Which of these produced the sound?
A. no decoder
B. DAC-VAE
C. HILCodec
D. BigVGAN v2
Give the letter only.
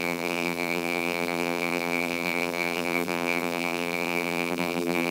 D